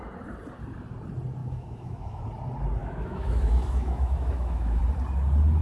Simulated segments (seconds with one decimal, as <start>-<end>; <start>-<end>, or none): 1.4-2.2; 2.8-4.8